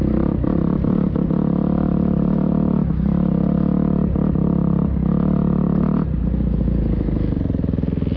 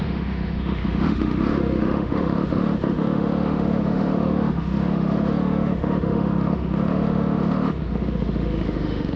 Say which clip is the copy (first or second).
second